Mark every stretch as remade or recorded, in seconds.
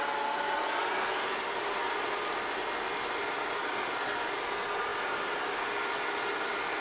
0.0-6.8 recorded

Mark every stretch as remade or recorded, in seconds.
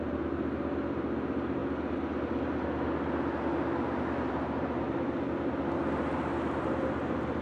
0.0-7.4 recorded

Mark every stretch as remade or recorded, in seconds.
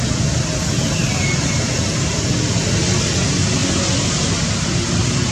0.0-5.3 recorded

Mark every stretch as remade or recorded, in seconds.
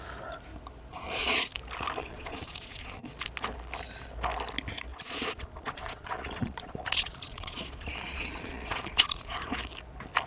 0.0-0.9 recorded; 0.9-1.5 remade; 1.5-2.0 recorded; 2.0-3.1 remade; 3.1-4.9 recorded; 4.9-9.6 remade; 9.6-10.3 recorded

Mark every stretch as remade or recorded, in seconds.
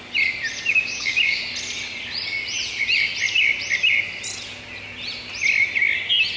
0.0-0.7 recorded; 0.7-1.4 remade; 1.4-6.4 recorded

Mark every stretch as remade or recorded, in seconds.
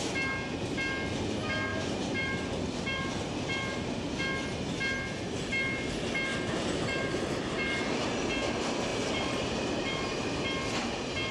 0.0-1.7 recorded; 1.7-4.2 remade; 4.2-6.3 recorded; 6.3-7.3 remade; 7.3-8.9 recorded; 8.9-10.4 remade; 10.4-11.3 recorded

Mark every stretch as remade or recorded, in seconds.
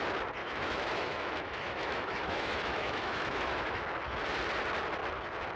0.0-0.4 recorded; 0.4-3.8 remade; 3.8-5.6 recorded